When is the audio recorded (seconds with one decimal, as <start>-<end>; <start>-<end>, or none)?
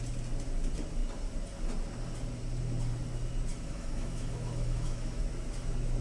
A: 0.0-3.5; 5.2-6.0